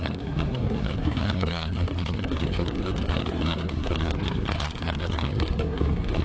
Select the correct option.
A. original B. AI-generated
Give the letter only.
B